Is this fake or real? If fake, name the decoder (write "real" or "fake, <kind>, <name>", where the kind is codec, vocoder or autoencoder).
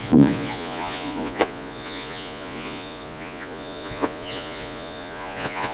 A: fake, vocoder, Vocos